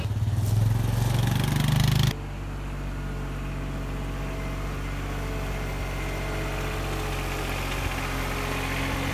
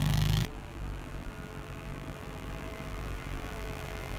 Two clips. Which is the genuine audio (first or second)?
first